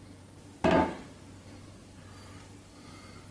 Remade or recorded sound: recorded